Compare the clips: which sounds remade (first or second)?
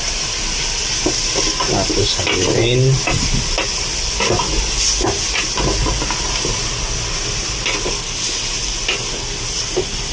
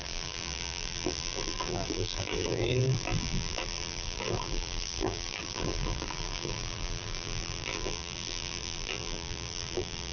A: second